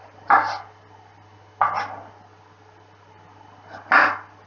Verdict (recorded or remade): recorded